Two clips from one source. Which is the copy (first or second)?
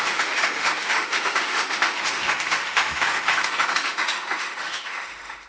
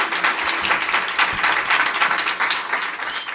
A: first